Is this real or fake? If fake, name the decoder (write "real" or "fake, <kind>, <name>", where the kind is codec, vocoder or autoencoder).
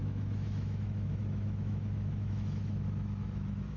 fake, autoencoder, DAC-VAE